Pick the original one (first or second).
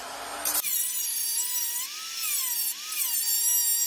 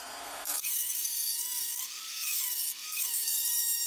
first